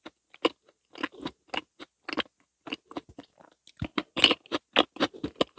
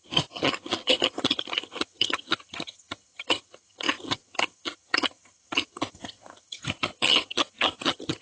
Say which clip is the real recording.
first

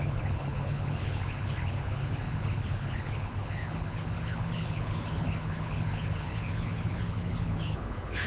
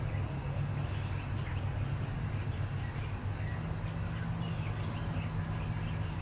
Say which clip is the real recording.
second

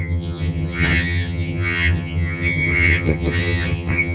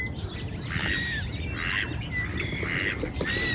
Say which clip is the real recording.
second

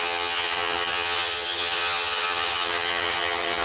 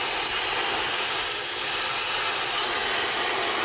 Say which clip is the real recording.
second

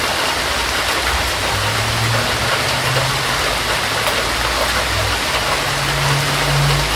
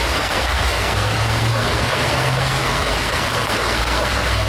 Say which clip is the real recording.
first